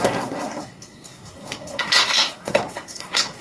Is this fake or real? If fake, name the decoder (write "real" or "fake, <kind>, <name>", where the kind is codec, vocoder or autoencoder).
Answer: fake, codec, SNAC